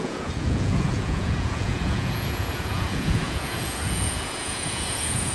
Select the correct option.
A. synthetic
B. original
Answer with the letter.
A